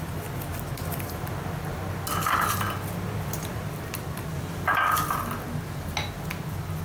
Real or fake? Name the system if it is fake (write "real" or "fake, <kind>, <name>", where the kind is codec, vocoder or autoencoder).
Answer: real